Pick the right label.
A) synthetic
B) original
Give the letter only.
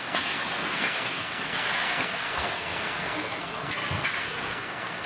A